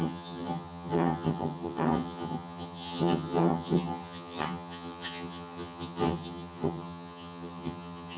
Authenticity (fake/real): fake